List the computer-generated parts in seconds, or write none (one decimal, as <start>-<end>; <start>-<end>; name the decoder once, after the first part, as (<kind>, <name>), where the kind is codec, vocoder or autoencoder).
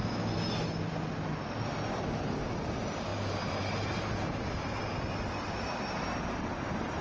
none